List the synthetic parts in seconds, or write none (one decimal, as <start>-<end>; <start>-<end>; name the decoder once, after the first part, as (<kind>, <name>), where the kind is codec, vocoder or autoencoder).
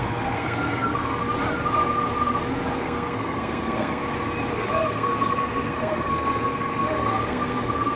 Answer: 0.0-1.2 (codec, SNAC); 2.7-4.0; 4.5-8.0